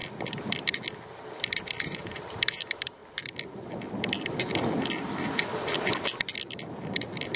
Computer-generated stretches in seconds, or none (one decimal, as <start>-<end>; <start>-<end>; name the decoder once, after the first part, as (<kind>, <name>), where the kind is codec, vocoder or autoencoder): 1.8-3.0 (vocoder, BigVGAN v2)